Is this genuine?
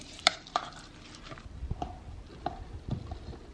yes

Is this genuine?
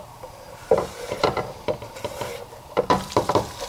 no